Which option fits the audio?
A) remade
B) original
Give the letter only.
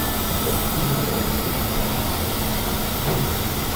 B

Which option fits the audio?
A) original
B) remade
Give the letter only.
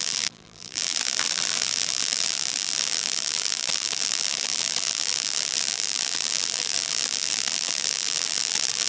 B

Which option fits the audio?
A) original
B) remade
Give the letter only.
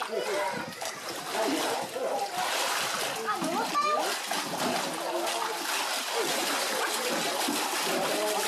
A